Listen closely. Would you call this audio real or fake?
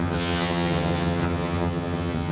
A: fake